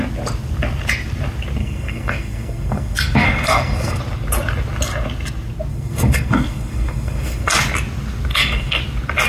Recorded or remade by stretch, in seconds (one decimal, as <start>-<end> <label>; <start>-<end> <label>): 0.0-1.6 recorded; 1.6-4.0 remade; 4.0-5.7 recorded; 5.7-7.5 remade; 7.5-8.3 recorded; 8.3-8.8 remade; 8.8-9.3 recorded